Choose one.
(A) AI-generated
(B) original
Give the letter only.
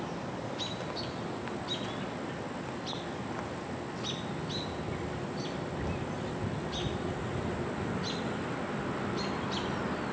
B